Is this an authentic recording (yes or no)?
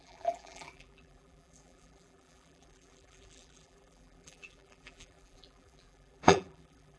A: no